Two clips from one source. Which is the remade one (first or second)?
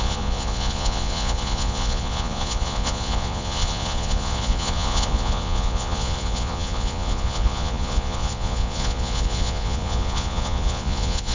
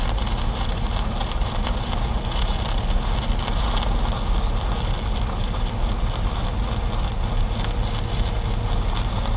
first